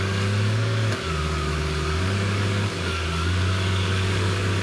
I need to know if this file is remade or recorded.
remade